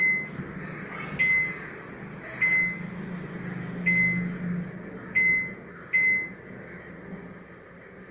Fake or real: real